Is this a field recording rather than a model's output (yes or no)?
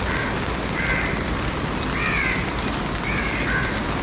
yes